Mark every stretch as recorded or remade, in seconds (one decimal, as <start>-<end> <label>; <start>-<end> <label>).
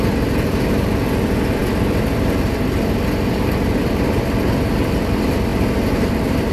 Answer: 0.0-5.5 remade; 5.5-6.1 recorded; 6.1-6.5 remade